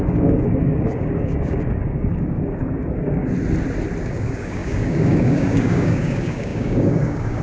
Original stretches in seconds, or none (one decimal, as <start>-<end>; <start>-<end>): 3.2-4.0